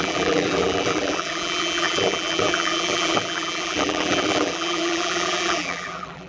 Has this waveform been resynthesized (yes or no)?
yes